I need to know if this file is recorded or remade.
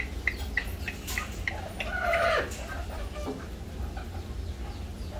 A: recorded